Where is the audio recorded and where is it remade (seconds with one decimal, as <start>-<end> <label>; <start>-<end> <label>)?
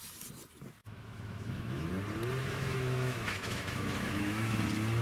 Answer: 0.0-0.8 recorded; 0.8-1.9 remade; 1.9-2.4 recorded; 2.4-4.6 remade; 4.6-5.0 recorded